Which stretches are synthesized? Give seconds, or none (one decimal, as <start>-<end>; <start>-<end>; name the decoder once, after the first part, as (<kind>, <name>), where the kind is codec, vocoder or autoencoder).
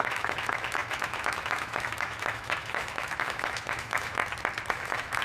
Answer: 0.0-4.2 (autoencoder, DAC-VAE); 4.7-5.2